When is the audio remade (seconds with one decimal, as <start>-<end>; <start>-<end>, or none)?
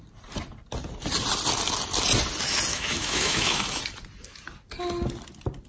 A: 2.7-3.8